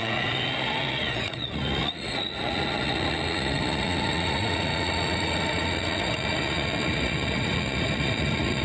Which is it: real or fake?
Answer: fake